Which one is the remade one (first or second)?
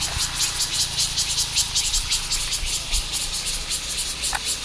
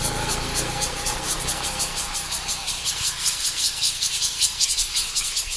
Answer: second